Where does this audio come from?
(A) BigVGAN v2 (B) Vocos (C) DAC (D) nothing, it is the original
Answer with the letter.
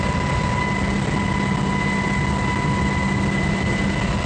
D